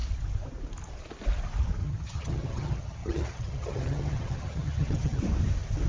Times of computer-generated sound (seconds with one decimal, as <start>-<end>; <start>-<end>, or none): 1.8-5.2

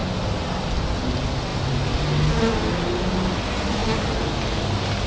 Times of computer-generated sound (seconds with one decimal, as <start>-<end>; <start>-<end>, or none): none

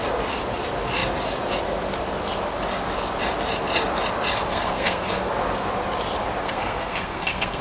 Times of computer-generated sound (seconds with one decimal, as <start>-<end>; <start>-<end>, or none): 4.5-5.3; 6.4-7.6

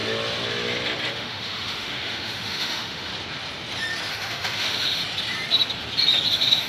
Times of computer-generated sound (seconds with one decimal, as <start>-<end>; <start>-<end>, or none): 1.1-3.1; 4.1-5.0; 6.3-6.7

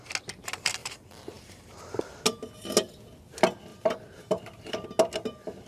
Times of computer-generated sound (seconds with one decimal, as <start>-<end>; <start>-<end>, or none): 0.8-2.0; 3.7-4.7

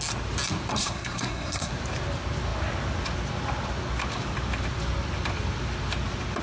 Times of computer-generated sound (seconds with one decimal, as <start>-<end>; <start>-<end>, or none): 0.7-1.7